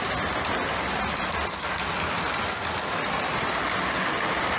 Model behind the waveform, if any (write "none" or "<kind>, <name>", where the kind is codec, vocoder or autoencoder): none